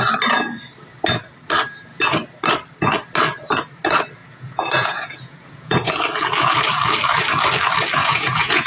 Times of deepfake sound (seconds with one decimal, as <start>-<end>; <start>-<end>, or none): 4.2-5.9; 8.0-8.7